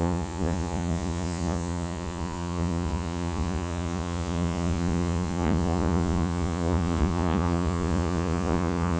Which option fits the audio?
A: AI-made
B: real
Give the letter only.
A